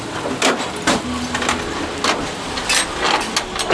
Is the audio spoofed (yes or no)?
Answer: no